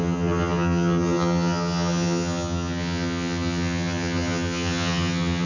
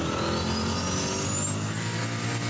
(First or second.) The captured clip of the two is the second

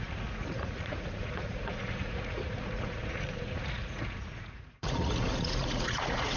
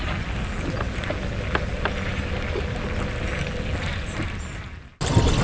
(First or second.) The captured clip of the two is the second